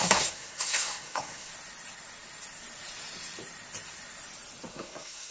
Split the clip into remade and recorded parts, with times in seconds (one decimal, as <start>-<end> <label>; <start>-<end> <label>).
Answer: 0.0-1.5 remade; 1.5-4.7 recorded; 4.7-5.3 remade